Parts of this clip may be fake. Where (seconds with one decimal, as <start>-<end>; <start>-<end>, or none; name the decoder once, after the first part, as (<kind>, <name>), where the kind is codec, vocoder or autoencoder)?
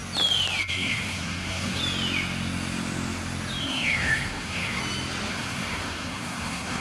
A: 0.7-1.8 (codec, SNAC); 3.6-4.8; 5.3-6.8